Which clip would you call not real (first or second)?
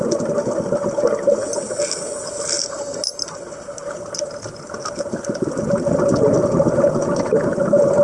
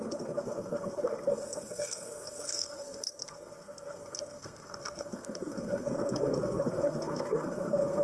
second